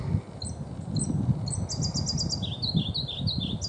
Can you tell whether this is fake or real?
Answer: real